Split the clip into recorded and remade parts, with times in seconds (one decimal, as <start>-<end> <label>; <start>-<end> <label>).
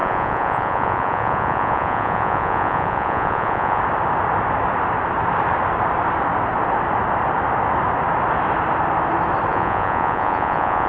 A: 0.0-3.8 remade; 3.8-9.5 recorded; 9.5-10.9 remade